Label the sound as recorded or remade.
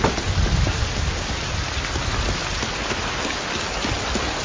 recorded